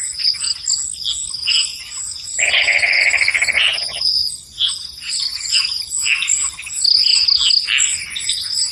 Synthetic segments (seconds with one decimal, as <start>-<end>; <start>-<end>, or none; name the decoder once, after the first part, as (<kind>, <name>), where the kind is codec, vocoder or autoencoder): 1.7-5.5 (vocoder, Vocos); 7.9-8.7